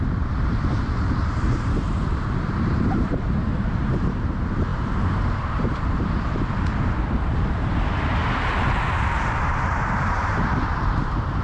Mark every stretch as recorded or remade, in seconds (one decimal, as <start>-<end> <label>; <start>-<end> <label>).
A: 0.0-11.4 remade